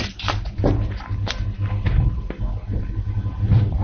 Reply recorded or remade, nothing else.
recorded